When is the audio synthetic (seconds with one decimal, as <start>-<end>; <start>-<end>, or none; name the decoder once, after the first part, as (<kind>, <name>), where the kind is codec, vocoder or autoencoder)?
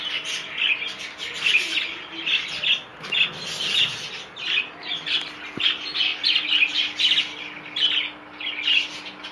none